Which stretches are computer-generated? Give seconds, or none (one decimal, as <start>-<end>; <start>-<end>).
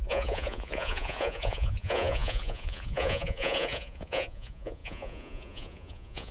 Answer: 0.0-6.3